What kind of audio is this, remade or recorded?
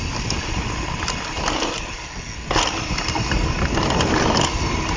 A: recorded